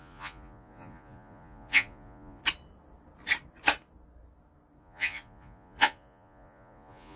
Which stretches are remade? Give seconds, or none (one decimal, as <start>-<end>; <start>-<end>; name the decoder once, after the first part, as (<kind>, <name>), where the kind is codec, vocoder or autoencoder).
0.0-2.4 (vocoder, Vocos); 4.8-7.2